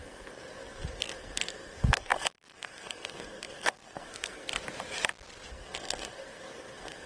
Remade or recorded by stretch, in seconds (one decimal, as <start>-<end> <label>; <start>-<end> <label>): 0.0-4.5 remade; 4.5-5.5 recorded; 5.5-7.1 remade